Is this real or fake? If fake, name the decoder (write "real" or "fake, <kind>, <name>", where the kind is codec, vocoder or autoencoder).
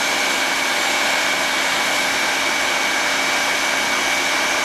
real